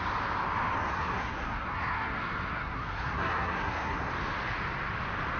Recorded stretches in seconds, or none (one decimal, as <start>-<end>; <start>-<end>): 0.0-0.9; 4.1-5.4

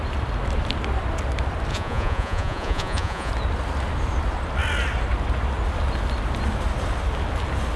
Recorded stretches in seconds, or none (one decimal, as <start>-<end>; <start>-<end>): 0.0-1.7; 3.3-7.8

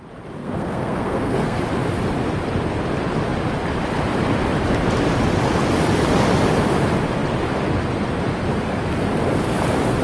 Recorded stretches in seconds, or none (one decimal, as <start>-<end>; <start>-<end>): 0.0-0.4; 1.6-10.0